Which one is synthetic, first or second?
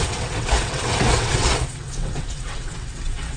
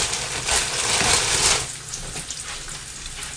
first